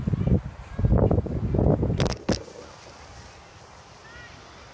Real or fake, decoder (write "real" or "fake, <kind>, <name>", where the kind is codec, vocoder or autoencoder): real